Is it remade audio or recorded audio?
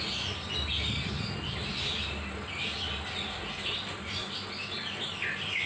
recorded